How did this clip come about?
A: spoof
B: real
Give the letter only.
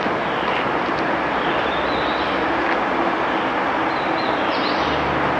B